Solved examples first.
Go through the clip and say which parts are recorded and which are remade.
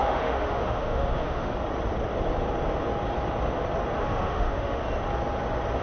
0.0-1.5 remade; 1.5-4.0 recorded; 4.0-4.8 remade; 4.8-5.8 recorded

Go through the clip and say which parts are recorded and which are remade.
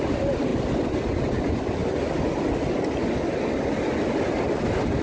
0.0-5.0 recorded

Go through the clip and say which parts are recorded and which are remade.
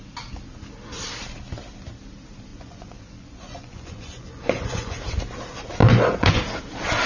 0.0-2.5 recorded; 2.5-5.0 remade; 5.0-5.8 recorded; 5.8-6.4 remade; 6.4-7.1 recorded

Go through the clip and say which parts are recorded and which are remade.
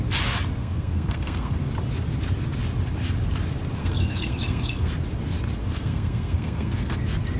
0.0-0.6 recorded; 0.6-1.7 remade; 1.7-3.8 recorded; 3.8-4.9 remade; 4.9-5.6 recorded; 5.6-7.0 remade; 7.0-7.4 recorded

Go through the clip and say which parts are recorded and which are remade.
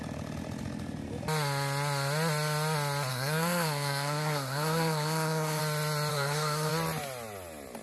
0.0-3.1 recorded; 3.1-5.6 remade; 5.6-6.1 recorded; 6.1-6.7 remade; 6.7-7.8 recorded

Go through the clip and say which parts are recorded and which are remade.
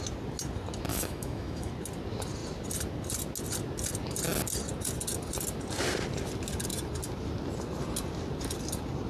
0.0-0.9 recorded; 0.9-1.7 remade; 1.7-9.1 recorded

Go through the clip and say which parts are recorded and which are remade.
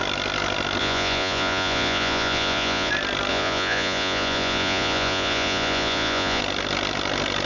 0.0-0.8 recorded; 0.8-2.9 remade; 2.9-3.3 recorded; 3.3-6.4 remade; 6.4-7.5 recorded